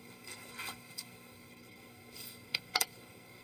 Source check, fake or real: fake